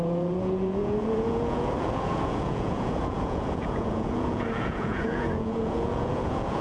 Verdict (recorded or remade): remade